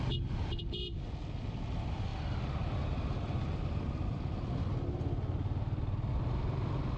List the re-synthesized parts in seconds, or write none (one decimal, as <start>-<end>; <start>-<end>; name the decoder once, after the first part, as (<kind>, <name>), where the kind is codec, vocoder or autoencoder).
none